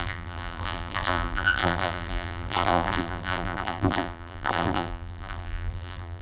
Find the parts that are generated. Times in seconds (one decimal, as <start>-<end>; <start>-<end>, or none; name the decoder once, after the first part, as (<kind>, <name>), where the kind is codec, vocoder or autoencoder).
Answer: 0.0-6.2 (vocoder, BigVGAN v2)